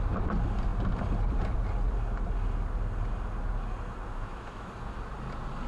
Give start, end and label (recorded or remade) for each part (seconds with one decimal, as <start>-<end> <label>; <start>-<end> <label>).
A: 0.0-4.1 recorded; 4.1-4.7 remade; 4.7-5.7 recorded